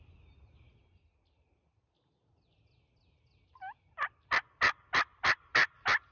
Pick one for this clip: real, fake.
real